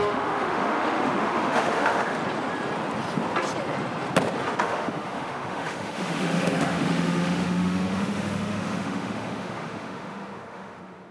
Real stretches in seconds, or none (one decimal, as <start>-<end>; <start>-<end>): 2.2-4.6